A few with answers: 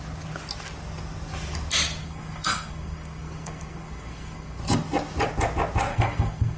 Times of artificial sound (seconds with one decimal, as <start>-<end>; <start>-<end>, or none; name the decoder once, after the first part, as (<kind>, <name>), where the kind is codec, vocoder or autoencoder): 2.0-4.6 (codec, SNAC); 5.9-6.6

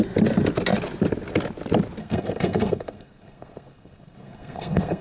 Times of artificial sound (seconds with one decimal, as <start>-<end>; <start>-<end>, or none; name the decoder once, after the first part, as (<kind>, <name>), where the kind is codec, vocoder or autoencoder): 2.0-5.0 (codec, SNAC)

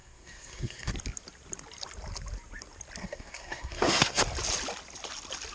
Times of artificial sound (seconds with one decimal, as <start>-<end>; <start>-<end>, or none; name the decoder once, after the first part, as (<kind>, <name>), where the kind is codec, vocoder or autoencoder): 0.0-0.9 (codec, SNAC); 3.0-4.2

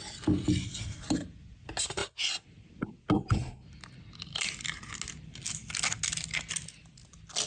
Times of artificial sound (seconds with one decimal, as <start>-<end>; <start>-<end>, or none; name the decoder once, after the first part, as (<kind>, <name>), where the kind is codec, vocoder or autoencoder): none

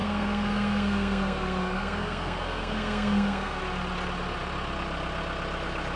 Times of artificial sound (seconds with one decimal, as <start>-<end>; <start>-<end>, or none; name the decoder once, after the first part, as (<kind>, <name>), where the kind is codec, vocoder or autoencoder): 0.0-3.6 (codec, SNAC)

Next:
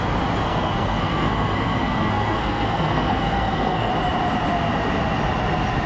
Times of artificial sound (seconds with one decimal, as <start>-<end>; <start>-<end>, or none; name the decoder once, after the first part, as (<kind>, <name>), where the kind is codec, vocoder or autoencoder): 0.4-3.9 (codec, SNAC)

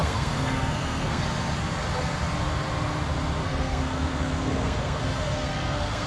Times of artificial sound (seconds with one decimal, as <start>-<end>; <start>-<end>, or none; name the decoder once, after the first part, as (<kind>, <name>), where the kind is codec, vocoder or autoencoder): 0.0-1.2 (codec, SNAC); 3.4-6.1